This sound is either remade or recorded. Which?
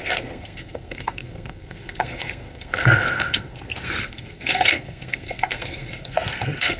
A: remade